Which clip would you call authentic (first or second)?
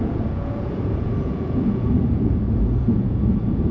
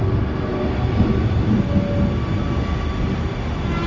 second